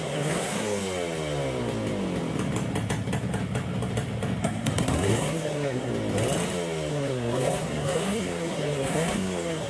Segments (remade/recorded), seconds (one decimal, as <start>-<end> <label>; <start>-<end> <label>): 0.0-0.8 remade; 0.8-4.4 recorded; 4.4-5.9 remade; 5.9-6.9 recorded; 6.9-9.7 remade